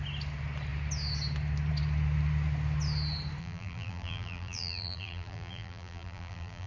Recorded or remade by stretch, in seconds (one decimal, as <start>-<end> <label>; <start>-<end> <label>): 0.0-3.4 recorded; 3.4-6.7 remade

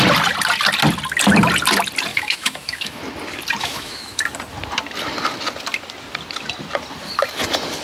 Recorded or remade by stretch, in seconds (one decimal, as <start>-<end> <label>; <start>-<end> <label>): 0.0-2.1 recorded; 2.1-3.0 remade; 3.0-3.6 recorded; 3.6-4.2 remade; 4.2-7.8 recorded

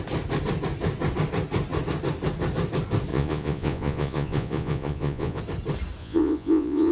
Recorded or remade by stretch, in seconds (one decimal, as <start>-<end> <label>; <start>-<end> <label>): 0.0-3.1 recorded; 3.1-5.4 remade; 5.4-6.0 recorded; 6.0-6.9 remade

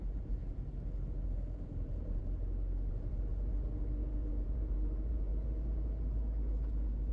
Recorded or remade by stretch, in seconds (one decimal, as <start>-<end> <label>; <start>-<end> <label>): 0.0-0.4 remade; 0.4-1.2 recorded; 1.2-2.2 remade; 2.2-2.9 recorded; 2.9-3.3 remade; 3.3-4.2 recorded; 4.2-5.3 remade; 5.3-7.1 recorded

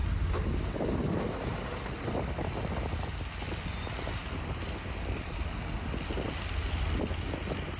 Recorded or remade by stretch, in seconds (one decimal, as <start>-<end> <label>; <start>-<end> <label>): 0.0-7.8 recorded